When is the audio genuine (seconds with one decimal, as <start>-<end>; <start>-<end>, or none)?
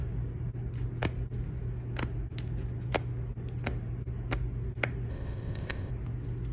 0.0-5.1; 5.9-6.5